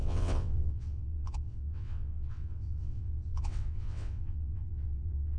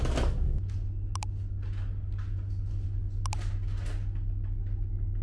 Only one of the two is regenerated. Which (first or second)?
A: first